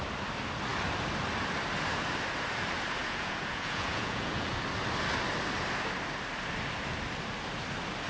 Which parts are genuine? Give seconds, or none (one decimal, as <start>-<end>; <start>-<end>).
0.0-3.0; 4.5-8.1

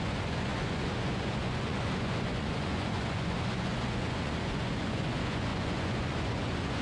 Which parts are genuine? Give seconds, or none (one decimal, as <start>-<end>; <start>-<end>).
none

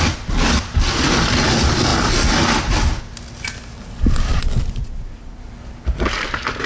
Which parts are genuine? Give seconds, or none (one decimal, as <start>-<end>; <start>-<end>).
0.0-4.8; 5.4-6.7

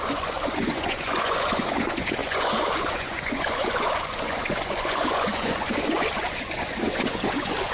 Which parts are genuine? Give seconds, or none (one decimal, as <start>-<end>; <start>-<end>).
none

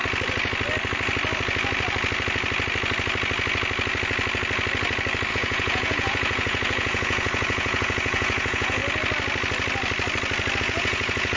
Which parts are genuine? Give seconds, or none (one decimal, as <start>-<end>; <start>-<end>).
0.0-5.3; 8.8-10.6

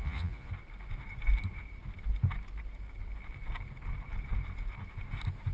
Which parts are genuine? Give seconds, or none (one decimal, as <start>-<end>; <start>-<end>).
0.5-5.5

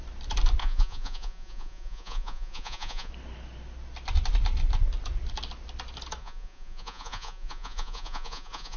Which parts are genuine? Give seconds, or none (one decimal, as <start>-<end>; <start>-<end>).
0.0-0.6; 3.1-6.2

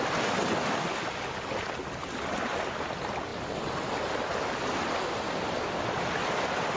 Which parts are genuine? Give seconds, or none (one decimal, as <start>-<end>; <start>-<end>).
0.0-6.8